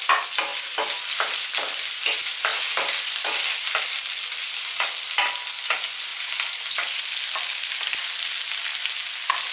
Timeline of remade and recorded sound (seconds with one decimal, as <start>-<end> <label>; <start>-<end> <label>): 0.0-0.5 recorded; 0.5-2.0 remade; 2.0-2.5 recorded; 2.5-3.8 remade; 3.8-6.1 recorded; 6.1-7.9 remade; 7.9-9.5 recorded

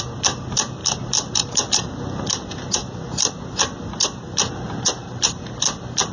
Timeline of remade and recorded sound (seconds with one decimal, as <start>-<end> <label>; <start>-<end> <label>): 0.0-0.8 recorded; 0.8-1.8 remade; 1.8-5.0 recorded; 5.0-5.6 remade; 5.6-6.1 recorded